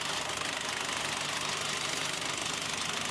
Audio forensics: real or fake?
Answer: real